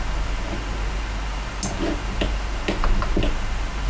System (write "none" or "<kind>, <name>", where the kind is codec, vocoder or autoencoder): none